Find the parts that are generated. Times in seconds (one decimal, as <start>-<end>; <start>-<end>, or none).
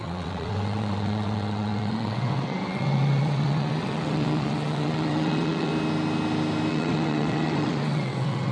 0.0-5.7; 6.7-8.5